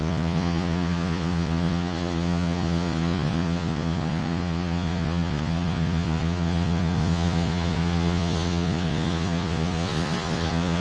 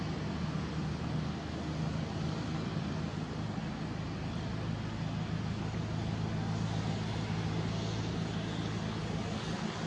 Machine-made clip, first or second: first